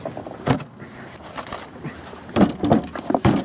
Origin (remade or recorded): recorded